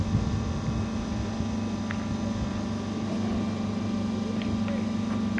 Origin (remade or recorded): recorded